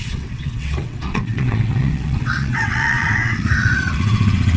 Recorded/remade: remade